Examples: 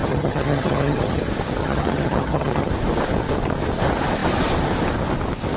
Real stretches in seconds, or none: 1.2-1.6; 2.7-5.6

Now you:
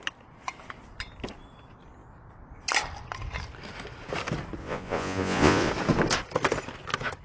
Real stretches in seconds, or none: 0.0-4.6; 5.7-7.2

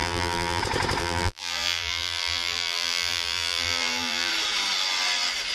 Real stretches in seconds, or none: 0.6-1.0; 4.3-5.5

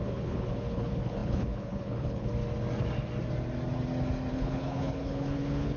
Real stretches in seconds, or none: 2.3-4.3